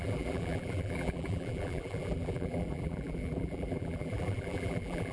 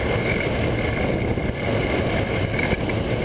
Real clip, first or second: second